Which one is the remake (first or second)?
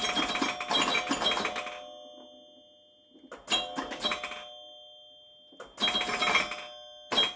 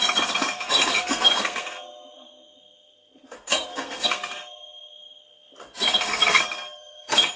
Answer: second